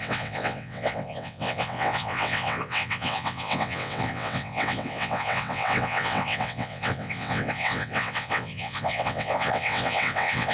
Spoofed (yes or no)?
yes